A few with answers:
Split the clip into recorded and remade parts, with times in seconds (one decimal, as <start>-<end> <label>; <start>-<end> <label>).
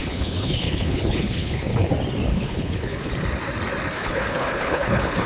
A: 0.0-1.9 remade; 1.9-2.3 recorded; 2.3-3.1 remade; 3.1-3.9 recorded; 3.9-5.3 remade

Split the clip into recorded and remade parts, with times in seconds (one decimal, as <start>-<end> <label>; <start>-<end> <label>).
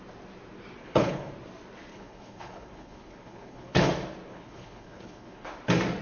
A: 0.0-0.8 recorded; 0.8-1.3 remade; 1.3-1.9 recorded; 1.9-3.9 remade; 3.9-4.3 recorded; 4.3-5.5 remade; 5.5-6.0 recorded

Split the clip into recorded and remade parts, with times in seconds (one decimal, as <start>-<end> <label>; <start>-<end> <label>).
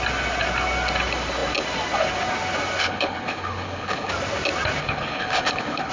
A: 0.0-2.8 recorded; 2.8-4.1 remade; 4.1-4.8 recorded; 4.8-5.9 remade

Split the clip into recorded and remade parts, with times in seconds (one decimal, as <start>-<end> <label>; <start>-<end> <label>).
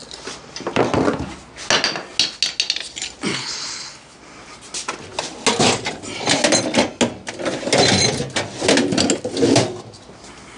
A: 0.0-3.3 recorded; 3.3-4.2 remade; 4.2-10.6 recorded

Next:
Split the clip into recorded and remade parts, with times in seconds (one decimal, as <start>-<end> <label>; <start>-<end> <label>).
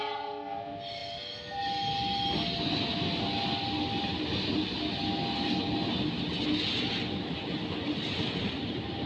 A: 0.0-9.1 recorded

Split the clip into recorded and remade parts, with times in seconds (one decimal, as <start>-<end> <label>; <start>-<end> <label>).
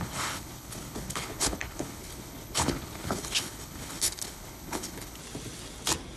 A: 0.0-5.2 remade; 5.2-6.2 recorded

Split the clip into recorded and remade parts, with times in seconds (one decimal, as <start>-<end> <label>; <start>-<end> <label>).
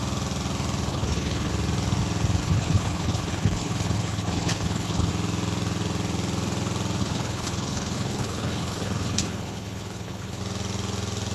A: 0.0-0.9 recorded; 0.9-1.5 remade; 1.5-2.4 recorded; 2.4-5.1 remade; 5.1-7.0 recorded; 7.0-10.4 remade; 10.4-11.3 recorded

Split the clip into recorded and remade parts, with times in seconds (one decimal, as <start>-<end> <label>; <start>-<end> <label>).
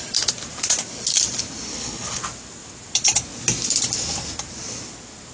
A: 0.0-1.7 recorded; 1.7-2.2 remade; 2.2-5.3 recorded